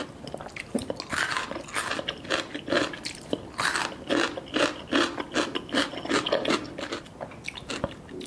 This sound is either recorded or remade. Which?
recorded